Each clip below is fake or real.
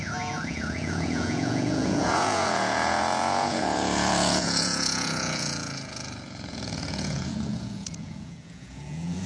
fake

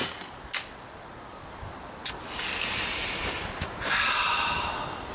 real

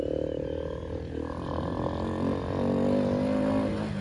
real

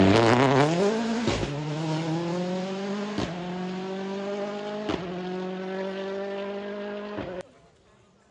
real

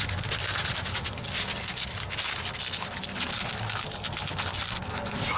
real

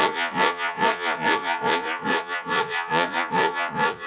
fake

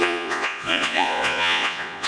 fake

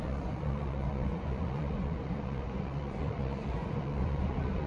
fake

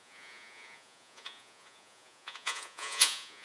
fake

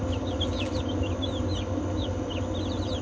real